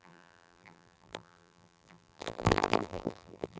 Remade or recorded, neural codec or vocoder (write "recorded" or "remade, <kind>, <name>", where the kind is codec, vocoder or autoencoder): remade, vocoder, BigVGAN v2